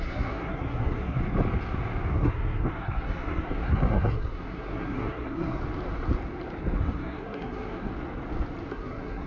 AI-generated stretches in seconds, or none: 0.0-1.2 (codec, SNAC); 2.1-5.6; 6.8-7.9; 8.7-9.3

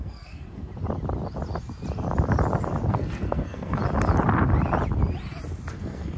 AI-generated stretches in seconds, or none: 0.0-0.7 (codec, SNAC); 2.9-3.8; 5.7-6.2

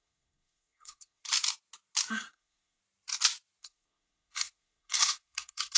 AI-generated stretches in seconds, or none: 0.0-1.2 (codec, SNAC); 2.1-2.8; 3.6-5.8

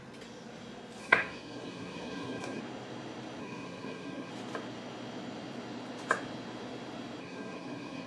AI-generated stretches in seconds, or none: 1.0-2.6 (codec, SNAC); 3.4-4.3; 7.2-8.1